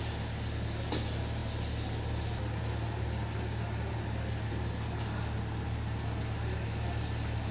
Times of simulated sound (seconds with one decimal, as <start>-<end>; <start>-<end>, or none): none